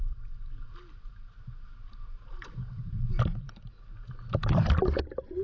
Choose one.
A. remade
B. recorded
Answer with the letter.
B